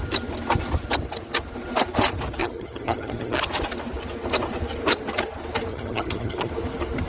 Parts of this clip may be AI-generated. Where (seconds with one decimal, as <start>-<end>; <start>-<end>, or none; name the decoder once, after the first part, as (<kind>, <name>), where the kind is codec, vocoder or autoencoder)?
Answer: 2.4-3.4 (vocoder, HiFi-GAN); 5.7-6.5